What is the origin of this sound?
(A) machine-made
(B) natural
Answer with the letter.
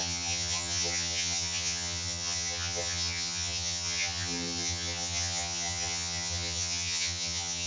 A